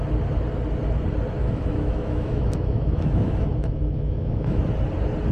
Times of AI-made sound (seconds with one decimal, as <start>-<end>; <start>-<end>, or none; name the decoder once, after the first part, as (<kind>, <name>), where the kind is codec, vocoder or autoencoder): 1.4-4.6 (autoencoder, DAC-VAE)